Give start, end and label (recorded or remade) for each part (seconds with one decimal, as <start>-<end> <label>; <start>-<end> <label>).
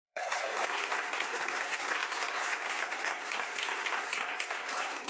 0.0-5.1 remade